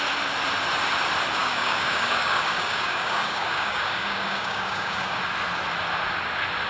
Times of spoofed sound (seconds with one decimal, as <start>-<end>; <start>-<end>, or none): 1.4-5.2